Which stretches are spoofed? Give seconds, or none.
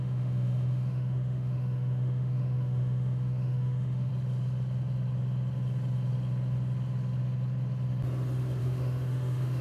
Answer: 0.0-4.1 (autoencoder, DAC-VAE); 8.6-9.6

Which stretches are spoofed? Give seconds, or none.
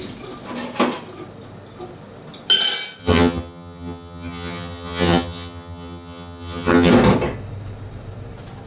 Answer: 3.0-6.9 (vocoder, HiFi-GAN)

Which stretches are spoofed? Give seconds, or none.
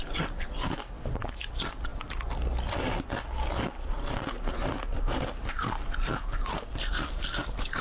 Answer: none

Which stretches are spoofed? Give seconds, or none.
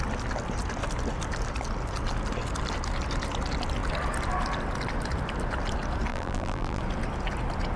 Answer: 6.1-6.8 (vocoder, BigVGAN v2)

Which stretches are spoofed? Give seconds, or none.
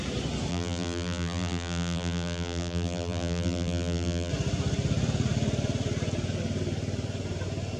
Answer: 0.5-4.3 (vocoder, BigVGAN v2)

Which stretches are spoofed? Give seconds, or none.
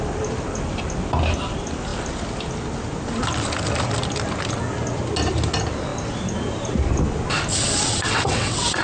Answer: 7.5-8.8 (vocoder, WaveNeXt)